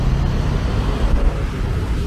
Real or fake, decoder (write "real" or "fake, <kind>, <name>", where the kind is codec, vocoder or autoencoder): real